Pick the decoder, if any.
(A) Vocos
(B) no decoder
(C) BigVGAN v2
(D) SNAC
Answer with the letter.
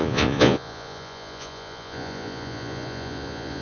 A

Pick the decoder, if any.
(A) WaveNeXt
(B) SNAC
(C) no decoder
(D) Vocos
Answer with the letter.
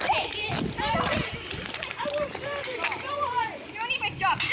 C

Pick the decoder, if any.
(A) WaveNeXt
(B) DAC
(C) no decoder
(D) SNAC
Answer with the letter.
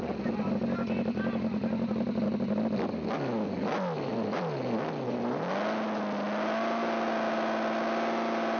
C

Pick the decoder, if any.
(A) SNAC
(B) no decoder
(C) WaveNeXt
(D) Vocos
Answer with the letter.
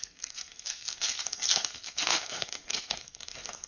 A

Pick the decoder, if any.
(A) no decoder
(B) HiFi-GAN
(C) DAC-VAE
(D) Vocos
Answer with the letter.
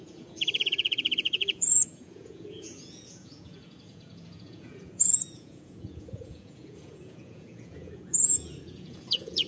D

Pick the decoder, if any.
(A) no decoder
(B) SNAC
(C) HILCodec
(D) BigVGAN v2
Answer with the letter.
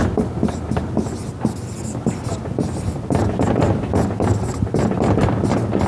A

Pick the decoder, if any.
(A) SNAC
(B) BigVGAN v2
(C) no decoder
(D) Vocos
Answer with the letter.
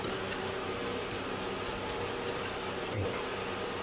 C